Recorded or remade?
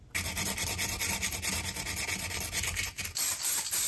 recorded